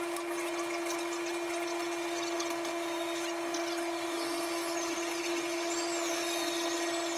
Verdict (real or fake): real